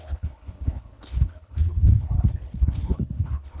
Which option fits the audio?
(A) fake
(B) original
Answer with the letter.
A